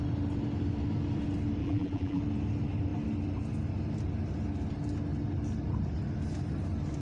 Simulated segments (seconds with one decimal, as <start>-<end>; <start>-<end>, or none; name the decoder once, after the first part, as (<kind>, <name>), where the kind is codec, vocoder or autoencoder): 1.6-2.2 (vocoder, BigVGAN v2)